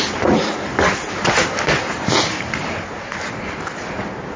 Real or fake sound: real